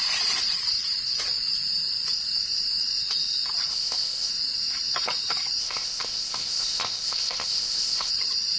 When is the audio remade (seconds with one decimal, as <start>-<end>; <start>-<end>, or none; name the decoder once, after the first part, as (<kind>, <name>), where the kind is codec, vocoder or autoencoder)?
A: 3.7-4.3 (codec, ZipCodec); 5.6-8.1